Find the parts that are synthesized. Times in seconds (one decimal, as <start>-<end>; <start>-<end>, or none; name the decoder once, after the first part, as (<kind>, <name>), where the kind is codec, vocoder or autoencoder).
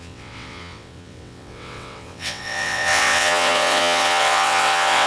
0.0-5.1 (vocoder, WaveNeXt)